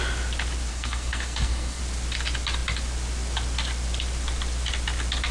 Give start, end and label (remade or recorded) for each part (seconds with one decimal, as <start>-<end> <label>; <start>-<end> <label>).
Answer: 0.0-0.7 recorded; 0.7-1.8 remade; 1.8-5.3 recorded